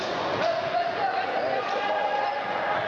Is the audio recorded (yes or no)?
no